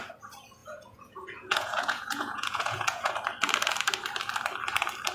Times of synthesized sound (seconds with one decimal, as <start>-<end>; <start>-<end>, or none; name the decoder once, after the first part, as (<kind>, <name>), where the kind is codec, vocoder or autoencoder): 0.6-3.1 (vocoder, Vocos)